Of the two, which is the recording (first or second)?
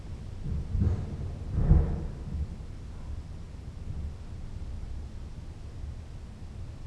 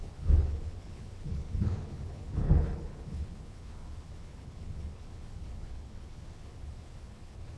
first